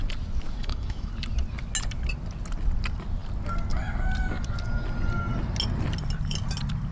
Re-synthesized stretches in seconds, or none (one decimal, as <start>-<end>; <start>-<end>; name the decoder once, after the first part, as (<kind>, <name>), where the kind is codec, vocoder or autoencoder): 0.6-1.1 (autoencoder, DAC-VAE)